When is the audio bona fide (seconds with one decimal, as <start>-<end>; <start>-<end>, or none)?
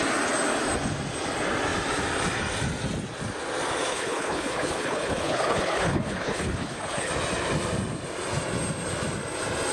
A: 0.0-3.9; 7.1-9.7